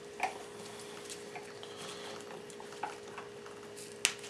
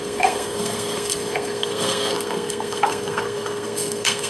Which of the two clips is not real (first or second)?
second